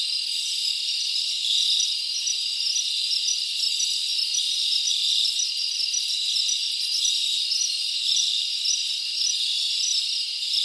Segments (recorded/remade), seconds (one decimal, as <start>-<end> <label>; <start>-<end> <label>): 0.0-10.6 recorded